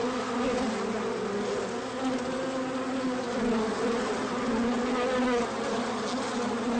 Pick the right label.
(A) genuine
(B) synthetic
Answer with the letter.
A